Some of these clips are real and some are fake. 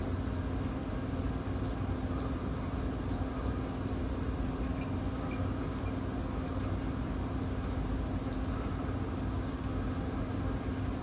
real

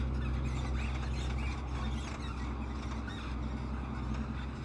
real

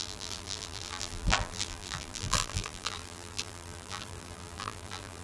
fake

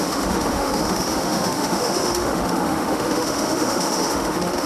fake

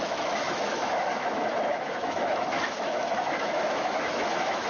fake